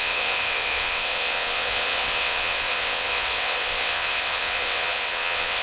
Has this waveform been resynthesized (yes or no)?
yes